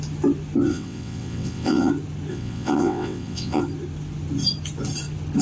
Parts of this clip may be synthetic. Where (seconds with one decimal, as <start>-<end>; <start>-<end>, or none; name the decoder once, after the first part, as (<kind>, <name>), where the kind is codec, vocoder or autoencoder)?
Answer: 0.7-1.9 (vocoder, WaveNeXt); 2.3-3.6